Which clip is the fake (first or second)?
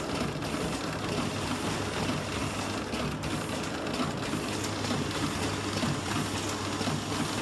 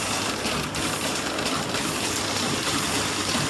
second